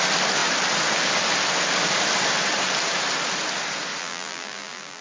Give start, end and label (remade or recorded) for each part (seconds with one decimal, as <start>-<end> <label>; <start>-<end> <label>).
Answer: 0.0-4.0 recorded; 4.0-5.0 remade